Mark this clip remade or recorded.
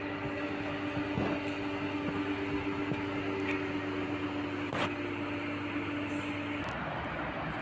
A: recorded